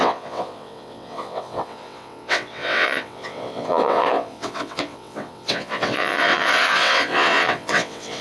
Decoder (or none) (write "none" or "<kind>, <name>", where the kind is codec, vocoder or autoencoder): vocoder, WaveNeXt